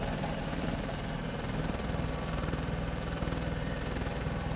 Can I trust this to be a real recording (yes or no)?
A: no